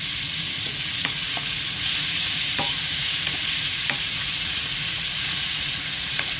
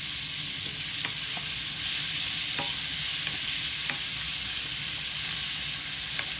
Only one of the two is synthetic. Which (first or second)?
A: first